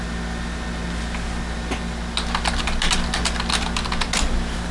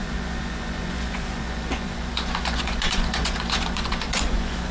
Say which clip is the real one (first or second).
first